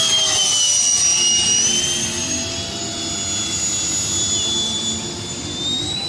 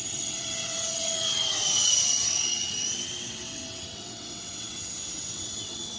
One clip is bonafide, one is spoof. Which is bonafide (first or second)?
first